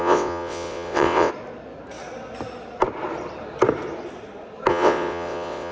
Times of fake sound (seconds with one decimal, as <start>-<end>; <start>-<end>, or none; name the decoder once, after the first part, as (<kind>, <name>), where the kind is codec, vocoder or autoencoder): 0.0-1.3 (vocoder, WaveNeXt); 4.7-5.7